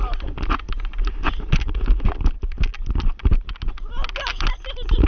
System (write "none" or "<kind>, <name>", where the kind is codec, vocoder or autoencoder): none